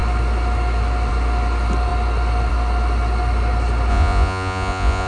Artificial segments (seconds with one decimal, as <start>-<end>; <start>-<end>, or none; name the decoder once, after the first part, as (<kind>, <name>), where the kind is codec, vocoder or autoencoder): 3.9-5.1 (vocoder, Vocos)